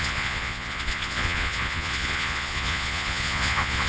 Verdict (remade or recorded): remade